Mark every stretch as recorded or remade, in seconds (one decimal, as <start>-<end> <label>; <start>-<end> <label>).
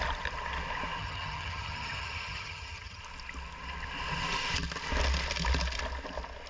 0.0-1.0 recorded; 1.0-3.0 remade; 3.0-6.5 recorded